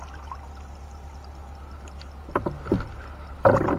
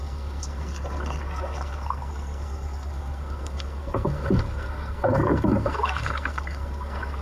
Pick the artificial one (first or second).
second